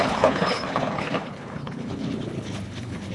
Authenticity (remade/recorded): remade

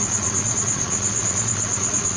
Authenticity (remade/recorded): remade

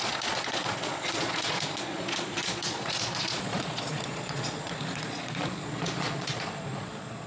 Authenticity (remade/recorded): remade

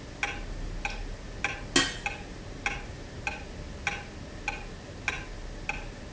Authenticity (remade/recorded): recorded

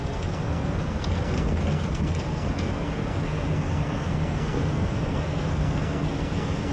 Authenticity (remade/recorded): remade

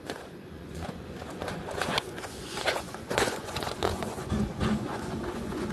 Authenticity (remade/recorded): remade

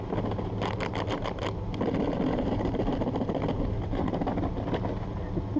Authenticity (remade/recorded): recorded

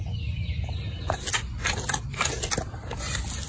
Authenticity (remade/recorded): recorded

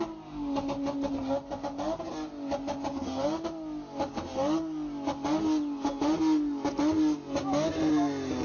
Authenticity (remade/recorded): recorded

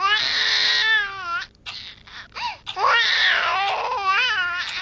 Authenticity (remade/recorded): recorded